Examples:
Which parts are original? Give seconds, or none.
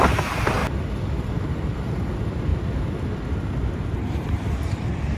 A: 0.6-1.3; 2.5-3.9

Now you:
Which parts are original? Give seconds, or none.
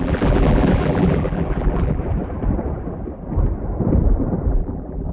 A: 2.0-4.5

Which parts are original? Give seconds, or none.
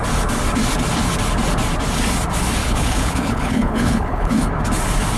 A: 0.0-2.6; 4.5-5.2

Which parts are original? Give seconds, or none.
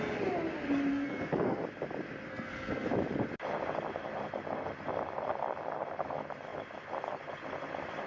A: 0.0-0.9; 1.6-2.3; 2.9-8.1